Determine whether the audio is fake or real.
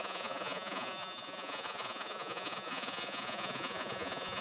fake